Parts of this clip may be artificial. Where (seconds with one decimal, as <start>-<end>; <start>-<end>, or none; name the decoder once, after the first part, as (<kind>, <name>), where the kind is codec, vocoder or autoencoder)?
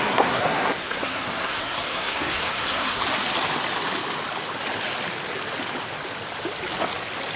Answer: 0.0-3.0 (codec, SNAC)